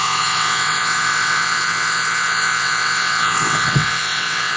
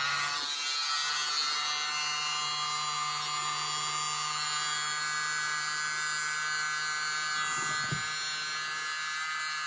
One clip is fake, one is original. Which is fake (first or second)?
first